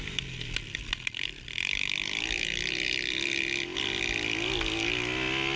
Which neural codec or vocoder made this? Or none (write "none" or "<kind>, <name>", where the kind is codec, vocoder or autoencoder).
none